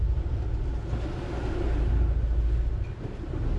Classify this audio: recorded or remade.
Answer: recorded